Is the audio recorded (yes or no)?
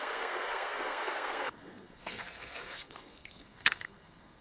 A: no